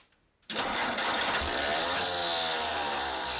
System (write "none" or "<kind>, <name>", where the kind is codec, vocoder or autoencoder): none